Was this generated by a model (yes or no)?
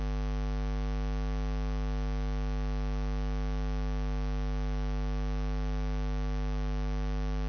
no